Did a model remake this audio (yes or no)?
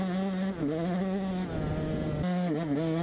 no